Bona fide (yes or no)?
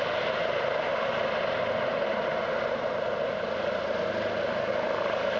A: yes